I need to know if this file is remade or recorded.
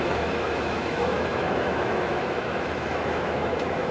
remade